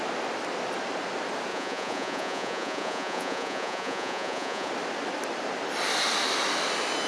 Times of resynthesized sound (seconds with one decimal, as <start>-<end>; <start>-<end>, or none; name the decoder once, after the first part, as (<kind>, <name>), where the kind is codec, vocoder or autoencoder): 1.5-4.7 (vocoder, Vocos)